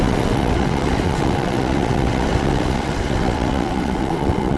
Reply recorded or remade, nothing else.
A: remade